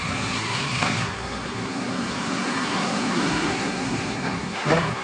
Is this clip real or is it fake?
fake